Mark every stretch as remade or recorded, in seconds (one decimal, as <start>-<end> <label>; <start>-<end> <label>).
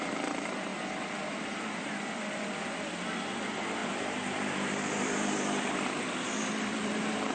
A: 0.0-0.7 remade; 0.7-1.3 recorded; 1.3-7.3 remade